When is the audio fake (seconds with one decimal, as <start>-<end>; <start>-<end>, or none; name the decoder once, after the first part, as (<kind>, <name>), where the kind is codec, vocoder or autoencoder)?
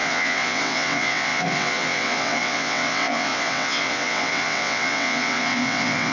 0.0-6.1 (vocoder, WaveNeXt)